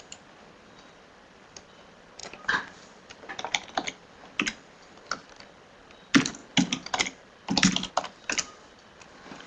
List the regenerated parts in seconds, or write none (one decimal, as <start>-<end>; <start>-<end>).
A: none